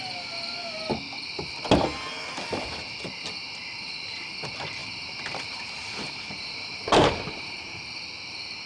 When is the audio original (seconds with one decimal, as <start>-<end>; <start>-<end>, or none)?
0.0-4.8; 7.8-8.7